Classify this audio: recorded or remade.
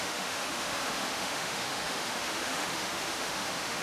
remade